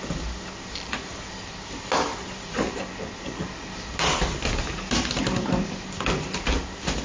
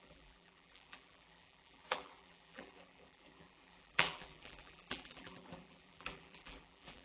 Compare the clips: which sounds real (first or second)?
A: first